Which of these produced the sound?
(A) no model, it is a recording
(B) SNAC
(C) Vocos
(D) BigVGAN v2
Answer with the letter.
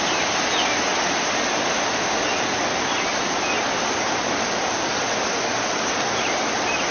A